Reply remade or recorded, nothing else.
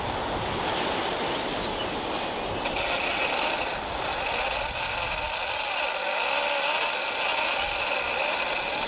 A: recorded